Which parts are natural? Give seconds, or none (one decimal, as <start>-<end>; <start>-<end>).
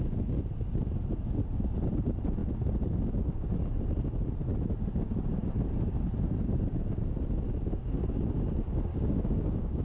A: 0.0-8.9